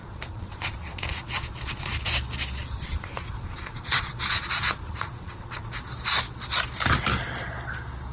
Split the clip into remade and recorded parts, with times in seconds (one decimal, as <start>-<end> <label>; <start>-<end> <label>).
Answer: 0.0-2.1 remade; 2.1-2.6 recorded; 2.6-5.7 remade; 5.7-8.1 recorded